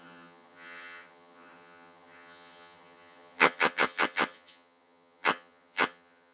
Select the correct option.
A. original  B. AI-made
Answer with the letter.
B